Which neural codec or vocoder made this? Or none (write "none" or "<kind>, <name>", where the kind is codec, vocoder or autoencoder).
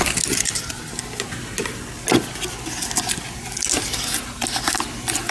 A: none